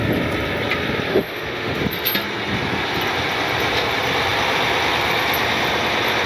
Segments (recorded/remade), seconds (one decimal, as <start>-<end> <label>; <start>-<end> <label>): 0.0-1.1 recorded; 1.1-1.8 remade; 1.8-6.3 recorded